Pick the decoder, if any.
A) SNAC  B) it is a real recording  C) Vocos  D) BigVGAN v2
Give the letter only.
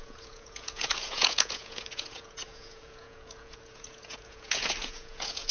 C